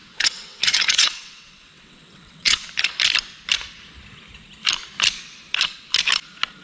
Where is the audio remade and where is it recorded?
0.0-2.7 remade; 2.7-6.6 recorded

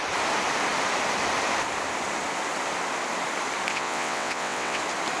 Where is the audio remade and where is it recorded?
0.0-3.7 recorded; 3.7-4.8 remade; 4.8-5.2 recorded

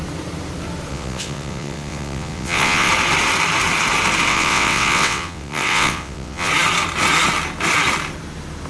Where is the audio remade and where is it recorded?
0.0-0.9 recorded; 0.9-2.9 remade; 2.9-4.3 recorded; 4.3-6.5 remade; 6.5-8.7 recorded